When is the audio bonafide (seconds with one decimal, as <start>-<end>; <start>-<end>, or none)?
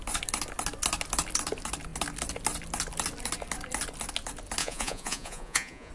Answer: 0.0-4.6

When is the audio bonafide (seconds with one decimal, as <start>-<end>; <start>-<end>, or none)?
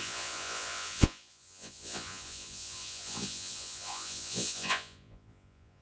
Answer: none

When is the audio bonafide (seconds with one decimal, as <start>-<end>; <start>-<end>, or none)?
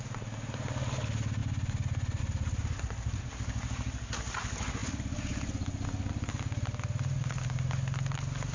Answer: 0.0-8.5